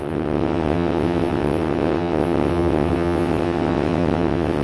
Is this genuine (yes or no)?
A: no